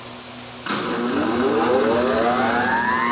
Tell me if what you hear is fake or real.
real